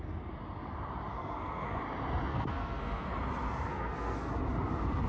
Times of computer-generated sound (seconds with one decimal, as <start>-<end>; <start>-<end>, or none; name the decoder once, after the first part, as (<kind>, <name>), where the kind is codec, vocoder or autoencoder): 1.1-1.8 (codec, SNAC); 2.3-3.1; 3.7-4.3